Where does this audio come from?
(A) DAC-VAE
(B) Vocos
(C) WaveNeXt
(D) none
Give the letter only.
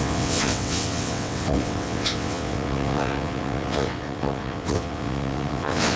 C